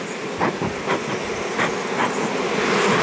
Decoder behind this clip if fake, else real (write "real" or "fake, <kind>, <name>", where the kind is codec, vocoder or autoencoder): real